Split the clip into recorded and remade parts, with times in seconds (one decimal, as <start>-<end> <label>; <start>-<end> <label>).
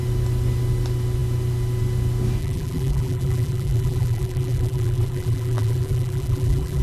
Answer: 0.0-2.4 recorded; 2.4-6.8 remade